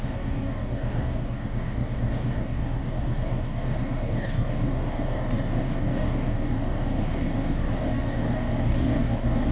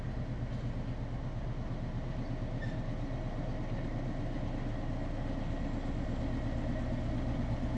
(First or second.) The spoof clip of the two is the first